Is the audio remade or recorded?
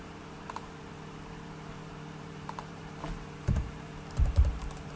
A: remade